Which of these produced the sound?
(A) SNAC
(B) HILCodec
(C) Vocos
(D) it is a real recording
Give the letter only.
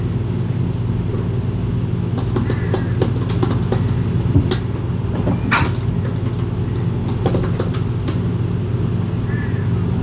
D